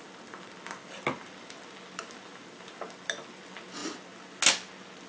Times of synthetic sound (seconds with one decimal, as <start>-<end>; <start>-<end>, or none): none